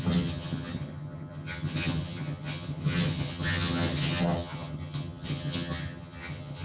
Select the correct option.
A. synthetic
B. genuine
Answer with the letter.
A